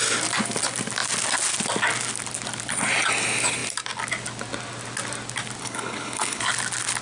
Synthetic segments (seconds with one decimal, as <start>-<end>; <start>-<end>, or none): 5.6-6.4